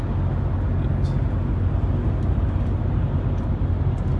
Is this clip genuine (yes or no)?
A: yes